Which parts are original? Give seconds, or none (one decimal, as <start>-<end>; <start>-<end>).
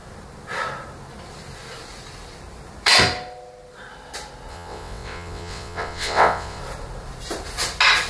0.0-4.5; 6.6-8.1